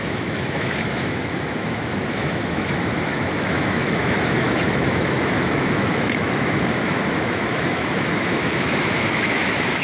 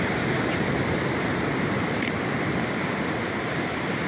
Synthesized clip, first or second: first